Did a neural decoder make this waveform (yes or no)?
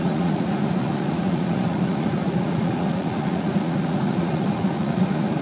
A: yes